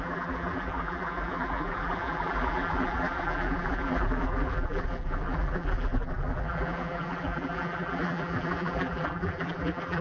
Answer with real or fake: fake